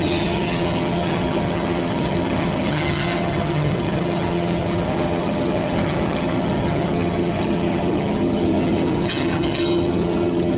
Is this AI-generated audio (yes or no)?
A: yes